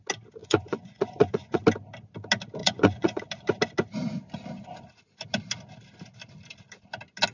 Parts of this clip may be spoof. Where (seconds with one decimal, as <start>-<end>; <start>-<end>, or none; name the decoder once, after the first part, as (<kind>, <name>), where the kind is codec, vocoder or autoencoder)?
0.4-1.6 (vocoder, Vocos); 2.6-3.2